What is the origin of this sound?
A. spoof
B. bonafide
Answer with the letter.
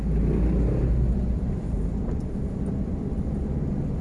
B